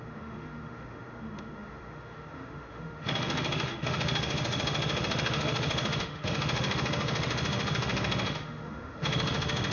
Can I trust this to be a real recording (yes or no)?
no